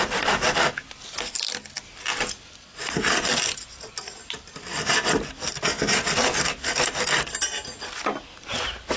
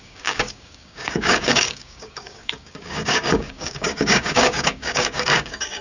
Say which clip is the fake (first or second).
second